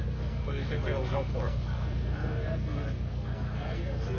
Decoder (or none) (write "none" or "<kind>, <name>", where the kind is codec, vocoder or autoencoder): codec, SNAC